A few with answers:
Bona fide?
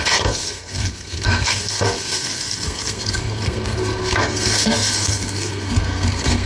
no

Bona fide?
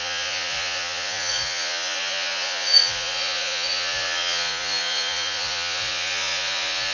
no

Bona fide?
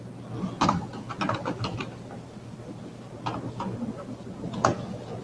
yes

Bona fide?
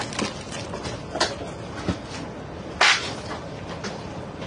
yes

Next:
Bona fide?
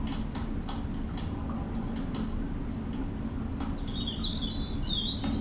yes